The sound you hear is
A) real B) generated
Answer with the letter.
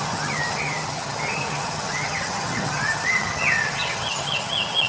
B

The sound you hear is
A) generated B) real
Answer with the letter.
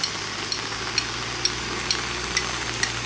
B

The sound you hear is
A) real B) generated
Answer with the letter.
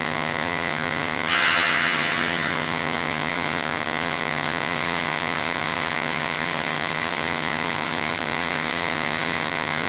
B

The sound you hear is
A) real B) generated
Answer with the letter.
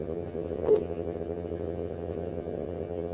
B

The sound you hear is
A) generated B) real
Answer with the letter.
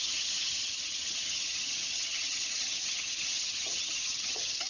A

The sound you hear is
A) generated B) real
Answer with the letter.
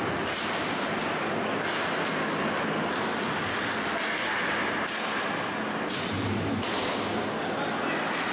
B